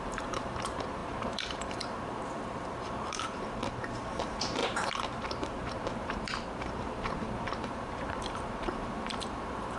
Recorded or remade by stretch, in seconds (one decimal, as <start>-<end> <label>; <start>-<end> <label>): 0.0-9.8 remade